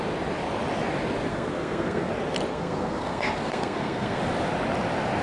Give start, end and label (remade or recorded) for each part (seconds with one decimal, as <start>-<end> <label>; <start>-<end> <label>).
0.0-1.3 recorded; 1.3-2.1 remade; 2.1-2.5 recorded; 2.5-4.2 remade; 4.2-5.2 recorded